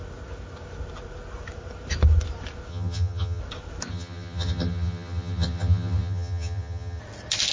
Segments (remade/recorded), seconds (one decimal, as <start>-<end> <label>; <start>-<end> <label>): 0.0-2.7 recorded; 2.7-3.4 remade; 3.4-3.9 recorded; 3.9-7.0 remade; 7.0-7.5 recorded